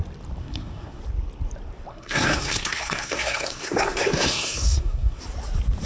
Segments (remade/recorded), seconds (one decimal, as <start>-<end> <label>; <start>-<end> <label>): 0.0-0.4 recorded; 0.4-1.0 remade; 1.0-1.9 recorded; 1.9-5.2 remade; 5.2-5.9 recorded